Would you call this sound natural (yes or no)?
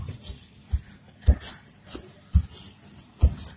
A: yes